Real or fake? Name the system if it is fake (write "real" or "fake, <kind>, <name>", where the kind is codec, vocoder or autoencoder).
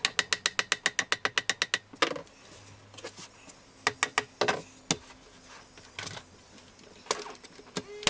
real